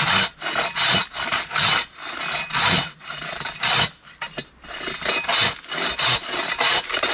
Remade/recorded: recorded